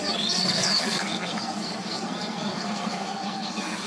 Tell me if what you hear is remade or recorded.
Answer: remade